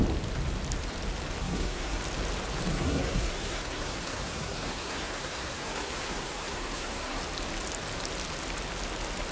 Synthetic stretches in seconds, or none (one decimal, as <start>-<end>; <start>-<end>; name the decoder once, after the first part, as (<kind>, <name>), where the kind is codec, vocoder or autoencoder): 1.4-2.0 (codec, SNAC); 2.7-7.2